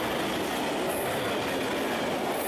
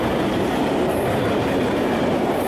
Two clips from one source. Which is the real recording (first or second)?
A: first